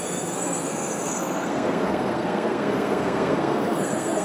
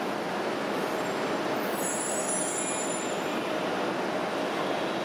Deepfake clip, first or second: first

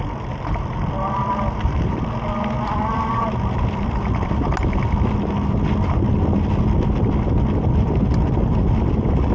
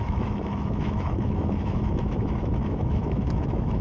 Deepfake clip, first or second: second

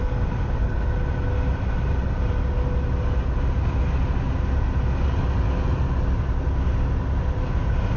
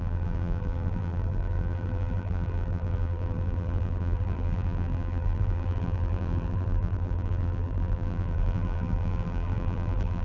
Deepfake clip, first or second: second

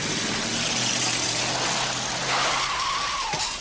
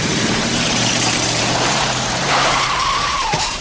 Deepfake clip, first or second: second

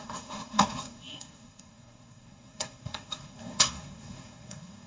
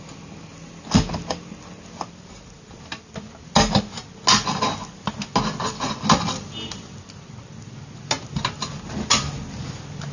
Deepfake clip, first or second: first